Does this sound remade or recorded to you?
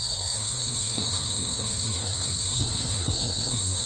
remade